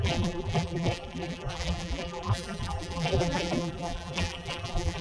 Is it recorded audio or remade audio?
remade